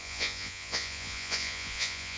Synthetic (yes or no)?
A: yes